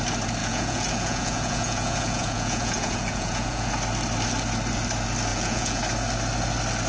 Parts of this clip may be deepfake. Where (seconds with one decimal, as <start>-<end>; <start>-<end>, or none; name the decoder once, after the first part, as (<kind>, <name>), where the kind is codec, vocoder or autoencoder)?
0.4-3.7 (vocoder, Vocos); 5.3-5.8

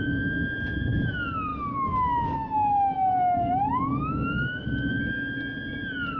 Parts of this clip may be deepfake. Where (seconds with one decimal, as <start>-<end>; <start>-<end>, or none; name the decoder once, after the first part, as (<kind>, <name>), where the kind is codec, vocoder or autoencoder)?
none

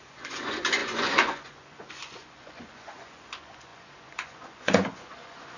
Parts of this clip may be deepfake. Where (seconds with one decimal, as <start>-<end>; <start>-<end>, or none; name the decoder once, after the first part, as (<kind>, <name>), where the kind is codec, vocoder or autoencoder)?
0.0-5.6 (vocoder, Vocos)

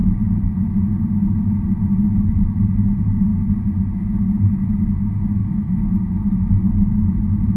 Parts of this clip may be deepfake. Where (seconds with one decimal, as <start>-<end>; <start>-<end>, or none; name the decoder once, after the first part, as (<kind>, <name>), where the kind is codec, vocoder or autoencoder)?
5.4-6.5 (autoencoder, DAC-VAE)

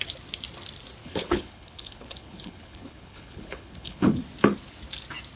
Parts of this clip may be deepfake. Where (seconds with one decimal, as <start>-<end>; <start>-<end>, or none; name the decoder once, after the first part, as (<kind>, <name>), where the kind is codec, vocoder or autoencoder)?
1.0-4.2 (codec, HILCodec)